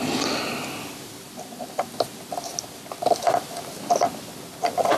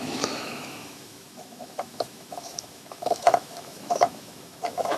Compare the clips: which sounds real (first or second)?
first